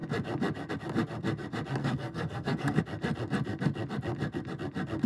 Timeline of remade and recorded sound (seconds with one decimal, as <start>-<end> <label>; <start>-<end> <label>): 0.0-1.8 recorded; 1.8-2.8 remade; 2.8-5.1 recorded